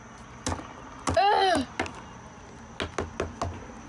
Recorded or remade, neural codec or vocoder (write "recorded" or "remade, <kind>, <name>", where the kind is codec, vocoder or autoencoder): recorded